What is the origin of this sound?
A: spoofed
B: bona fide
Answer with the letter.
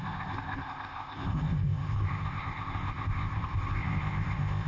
A